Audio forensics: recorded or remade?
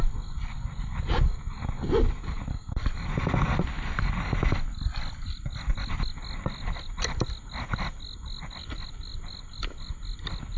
recorded